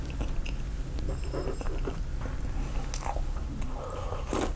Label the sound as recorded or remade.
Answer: recorded